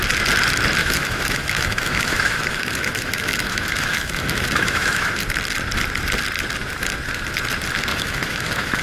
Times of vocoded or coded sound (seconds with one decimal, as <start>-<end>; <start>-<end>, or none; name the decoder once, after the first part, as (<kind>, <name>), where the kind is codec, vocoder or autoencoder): 0.8-5.1 (autoencoder, DAC-VAE); 7.9-8.8